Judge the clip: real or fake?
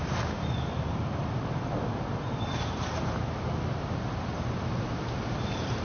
fake